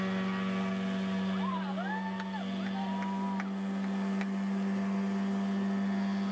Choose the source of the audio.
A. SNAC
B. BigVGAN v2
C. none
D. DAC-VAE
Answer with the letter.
C